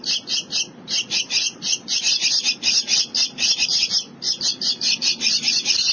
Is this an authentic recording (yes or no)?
yes